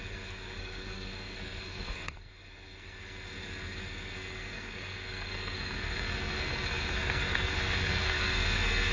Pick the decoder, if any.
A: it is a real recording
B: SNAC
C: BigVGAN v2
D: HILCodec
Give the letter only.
B